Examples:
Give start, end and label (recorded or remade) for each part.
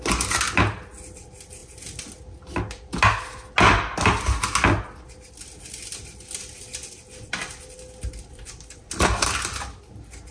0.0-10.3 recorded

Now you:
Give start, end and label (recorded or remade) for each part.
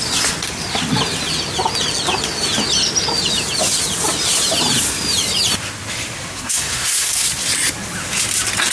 0.0-6.3 recorded; 6.3-7.3 remade; 7.3-8.7 recorded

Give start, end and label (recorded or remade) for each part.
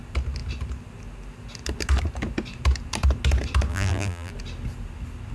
0.0-3.7 recorded; 3.7-4.3 remade; 4.3-5.3 recorded